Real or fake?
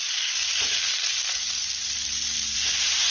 real